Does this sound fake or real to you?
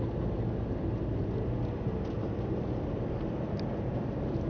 real